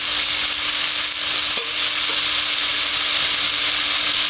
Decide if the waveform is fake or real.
real